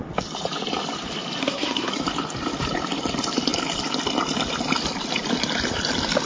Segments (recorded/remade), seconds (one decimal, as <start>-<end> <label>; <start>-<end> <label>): 0.0-1.4 recorded; 1.4-1.9 remade; 1.9-6.3 recorded